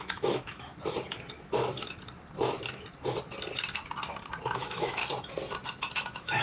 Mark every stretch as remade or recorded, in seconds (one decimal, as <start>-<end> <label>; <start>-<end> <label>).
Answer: 0.0-0.7 remade; 0.7-4.5 recorded; 4.5-5.0 remade; 5.0-6.0 recorded; 6.0-6.4 remade